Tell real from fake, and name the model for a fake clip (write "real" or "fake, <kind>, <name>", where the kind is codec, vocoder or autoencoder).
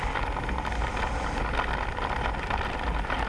real